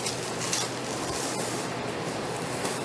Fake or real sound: fake